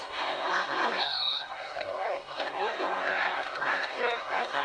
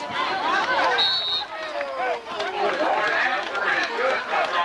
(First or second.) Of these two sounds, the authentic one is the second